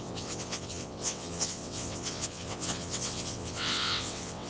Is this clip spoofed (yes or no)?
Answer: yes